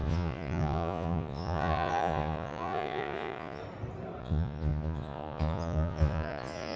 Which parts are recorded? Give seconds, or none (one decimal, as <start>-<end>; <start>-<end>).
3.6-4.2